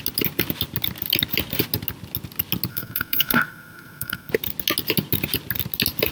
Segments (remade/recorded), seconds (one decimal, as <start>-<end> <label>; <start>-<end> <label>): 0.0-2.7 recorded; 2.7-4.3 remade; 4.3-6.1 recorded

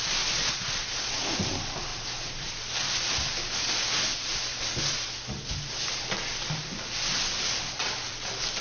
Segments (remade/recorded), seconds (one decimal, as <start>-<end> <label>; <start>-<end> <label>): 0.0-8.6 recorded

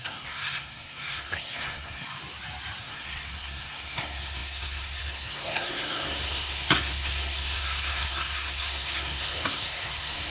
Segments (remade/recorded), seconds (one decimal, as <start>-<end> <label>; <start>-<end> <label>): 0.0-2.2 remade; 2.2-2.8 recorded; 2.8-10.3 remade

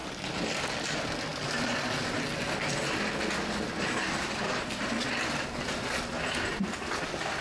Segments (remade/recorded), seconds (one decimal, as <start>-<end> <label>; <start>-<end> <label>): 0.0-7.4 recorded

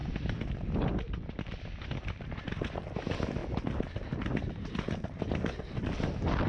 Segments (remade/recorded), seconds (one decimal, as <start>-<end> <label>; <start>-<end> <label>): 0.0-6.5 recorded

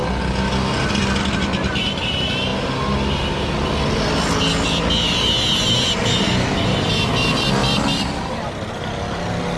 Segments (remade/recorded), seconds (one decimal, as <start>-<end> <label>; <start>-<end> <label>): 0.0-9.6 recorded